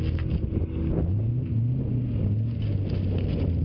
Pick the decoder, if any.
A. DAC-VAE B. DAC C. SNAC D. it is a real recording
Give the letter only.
D